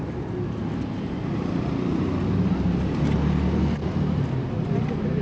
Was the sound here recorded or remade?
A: recorded